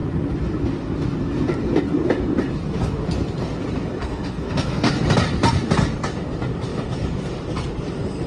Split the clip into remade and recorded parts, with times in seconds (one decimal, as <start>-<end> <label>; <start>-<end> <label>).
0.0-4.0 recorded; 4.0-4.9 remade; 4.9-8.3 recorded